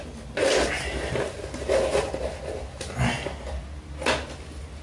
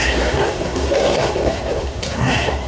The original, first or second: first